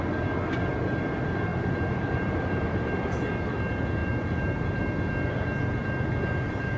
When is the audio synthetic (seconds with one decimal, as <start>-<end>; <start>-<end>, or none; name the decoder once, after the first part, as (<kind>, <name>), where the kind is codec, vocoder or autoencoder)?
1.5-2.9 (vocoder, BigVGAN v2); 4.0-4.8; 5.8-6.8

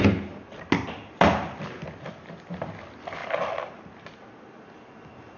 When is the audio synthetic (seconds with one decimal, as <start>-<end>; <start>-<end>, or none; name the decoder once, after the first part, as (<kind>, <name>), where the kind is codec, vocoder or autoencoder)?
none

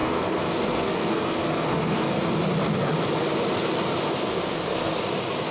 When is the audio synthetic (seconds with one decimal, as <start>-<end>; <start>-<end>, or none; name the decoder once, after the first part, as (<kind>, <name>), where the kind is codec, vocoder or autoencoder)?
0.0-2.3 (codec, SNAC); 4.3-5.0

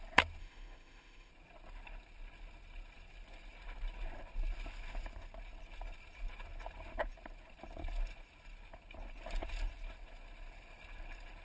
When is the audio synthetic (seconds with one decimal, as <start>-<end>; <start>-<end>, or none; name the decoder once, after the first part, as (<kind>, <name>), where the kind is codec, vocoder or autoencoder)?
0.4-1.3 (autoencoder, DAC-VAE)

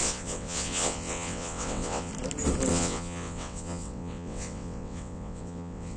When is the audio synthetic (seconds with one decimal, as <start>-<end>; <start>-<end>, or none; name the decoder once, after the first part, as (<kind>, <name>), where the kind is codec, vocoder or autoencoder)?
0.0-2.1 (vocoder, WaveNeXt); 2.7-6.0